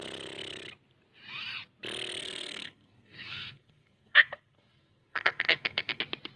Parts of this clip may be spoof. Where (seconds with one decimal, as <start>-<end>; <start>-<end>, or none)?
2.2-6.0